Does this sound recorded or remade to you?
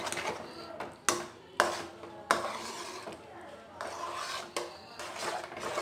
recorded